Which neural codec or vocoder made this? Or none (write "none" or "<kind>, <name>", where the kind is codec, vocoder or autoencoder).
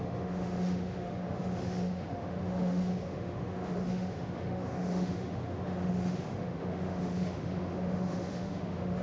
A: autoencoder, DAC-VAE